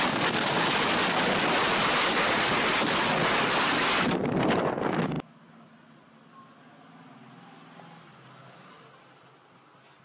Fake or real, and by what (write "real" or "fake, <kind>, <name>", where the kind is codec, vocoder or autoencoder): real